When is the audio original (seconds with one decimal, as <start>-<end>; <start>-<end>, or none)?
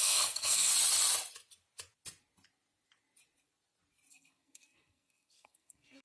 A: 0.7-4.1